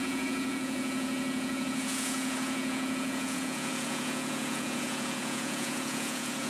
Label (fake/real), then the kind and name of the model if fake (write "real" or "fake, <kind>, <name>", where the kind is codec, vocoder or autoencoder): fake, vocoder, Vocos